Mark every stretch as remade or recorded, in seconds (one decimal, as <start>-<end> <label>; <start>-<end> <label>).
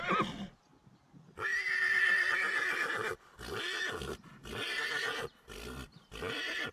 0.0-6.7 recorded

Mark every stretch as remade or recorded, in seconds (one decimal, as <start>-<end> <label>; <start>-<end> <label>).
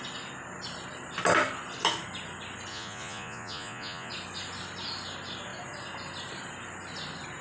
0.0-2.7 recorded; 2.7-4.1 remade; 4.1-7.4 recorded